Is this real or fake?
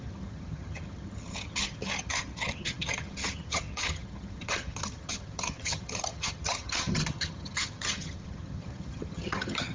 fake